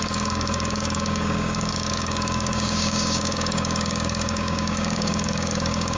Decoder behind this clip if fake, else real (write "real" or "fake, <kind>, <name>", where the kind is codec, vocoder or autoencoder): fake, codec, DAC